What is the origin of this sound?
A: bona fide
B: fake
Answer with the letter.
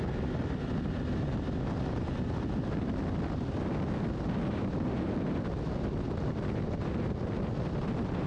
A